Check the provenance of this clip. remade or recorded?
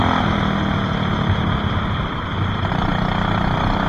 recorded